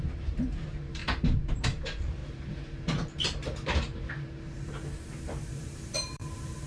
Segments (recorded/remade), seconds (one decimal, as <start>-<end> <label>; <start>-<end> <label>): 0.0-1.0 remade; 1.0-1.6 recorded; 1.6-2.2 remade; 2.2-5.6 recorded; 5.6-6.2 remade; 6.2-6.7 recorded